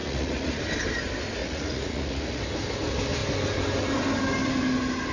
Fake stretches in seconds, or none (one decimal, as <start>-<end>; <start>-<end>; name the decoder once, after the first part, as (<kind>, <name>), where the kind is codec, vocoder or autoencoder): 0.0-0.6 (vocoder, Vocos); 1.4-2.4